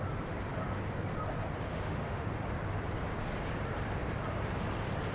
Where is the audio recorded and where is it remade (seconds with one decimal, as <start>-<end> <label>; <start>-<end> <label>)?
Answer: 0.0-1.7 recorded; 1.7-2.3 remade; 2.3-5.1 recorded